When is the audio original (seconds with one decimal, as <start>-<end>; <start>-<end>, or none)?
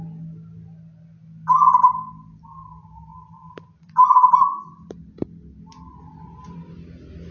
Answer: 0.0-7.3